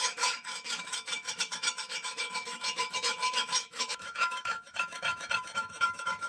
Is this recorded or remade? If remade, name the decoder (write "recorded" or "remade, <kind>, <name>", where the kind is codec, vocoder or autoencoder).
remade, autoencoder, DAC-VAE